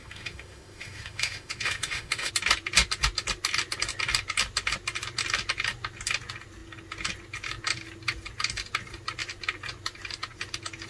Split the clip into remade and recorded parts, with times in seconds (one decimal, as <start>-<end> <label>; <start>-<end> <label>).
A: 0.0-2.3 remade; 2.3-10.9 recorded